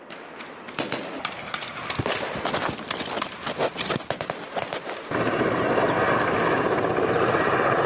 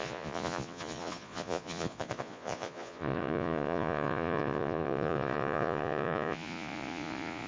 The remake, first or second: second